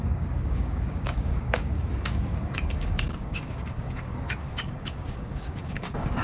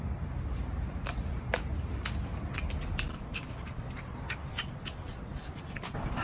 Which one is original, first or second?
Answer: second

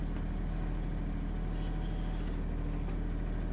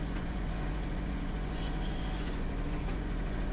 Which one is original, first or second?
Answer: first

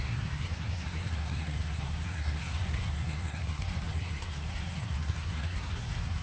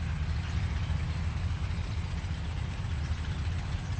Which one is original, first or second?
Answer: second